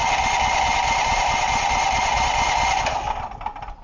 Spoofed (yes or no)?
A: no